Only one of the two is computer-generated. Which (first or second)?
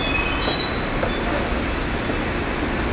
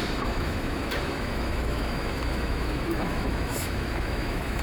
second